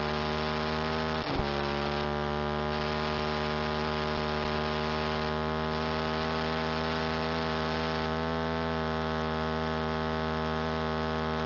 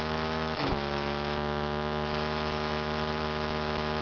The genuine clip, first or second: first